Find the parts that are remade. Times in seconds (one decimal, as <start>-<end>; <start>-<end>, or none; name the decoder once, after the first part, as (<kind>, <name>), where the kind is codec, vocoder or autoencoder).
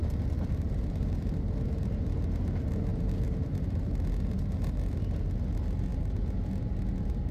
0.0-1.2 (vocoder, BigVGAN v2)